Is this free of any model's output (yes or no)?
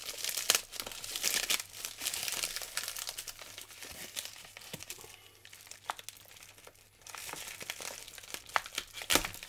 yes